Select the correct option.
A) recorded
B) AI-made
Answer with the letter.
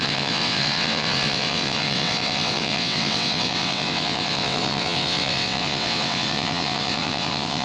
B